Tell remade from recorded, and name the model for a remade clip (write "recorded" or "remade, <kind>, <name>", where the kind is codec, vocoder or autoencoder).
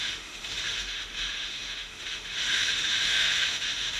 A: remade, autoencoder, DAC-VAE